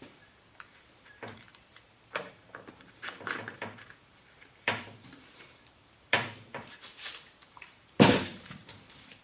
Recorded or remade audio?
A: remade